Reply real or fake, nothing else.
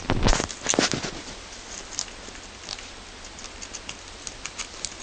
real